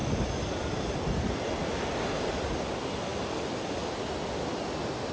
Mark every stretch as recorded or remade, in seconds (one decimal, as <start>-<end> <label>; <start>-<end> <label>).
0.0-5.1 recorded